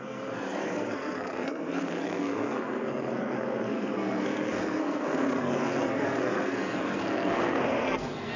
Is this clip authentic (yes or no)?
no